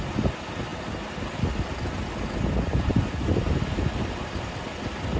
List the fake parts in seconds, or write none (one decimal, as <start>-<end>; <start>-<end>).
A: none